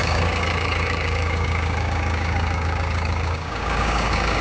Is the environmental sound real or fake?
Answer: fake